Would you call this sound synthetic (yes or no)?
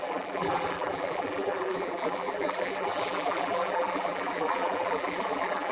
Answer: yes